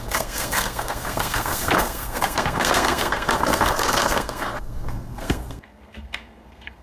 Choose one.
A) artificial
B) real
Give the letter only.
A